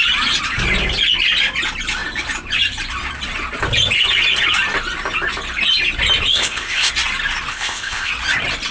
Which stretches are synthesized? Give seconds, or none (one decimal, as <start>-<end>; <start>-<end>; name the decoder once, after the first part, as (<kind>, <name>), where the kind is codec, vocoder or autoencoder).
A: 6.3-6.9 (codec, ZipCodec); 7.5-8.1